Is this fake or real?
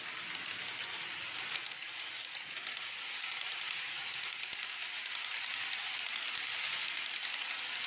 real